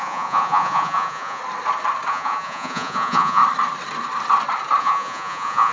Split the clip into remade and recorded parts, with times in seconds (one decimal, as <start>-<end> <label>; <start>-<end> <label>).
0.0-1.4 remade; 1.4-2.1 recorded; 2.1-3.4 remade; 3.4-4.8 recorded; 4.8-5.7 remade